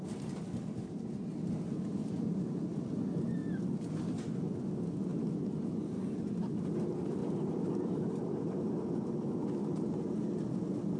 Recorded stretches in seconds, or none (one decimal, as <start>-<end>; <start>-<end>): 0.0-3.4; 4.1-7.2; 8.4-9.4; 9.9-11.0